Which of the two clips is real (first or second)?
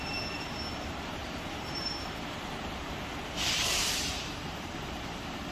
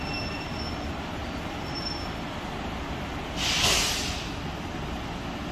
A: second